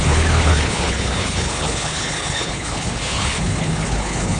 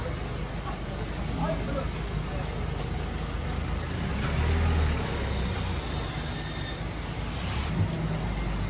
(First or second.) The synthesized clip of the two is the first